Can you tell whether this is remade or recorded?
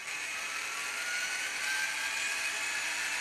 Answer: recorded